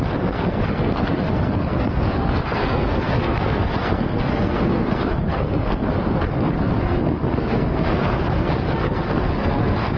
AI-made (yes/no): yes